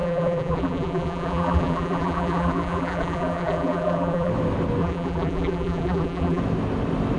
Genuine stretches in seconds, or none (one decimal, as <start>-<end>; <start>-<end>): 4.3-4.8; 6.4-7.2